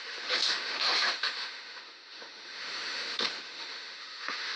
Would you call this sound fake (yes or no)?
yes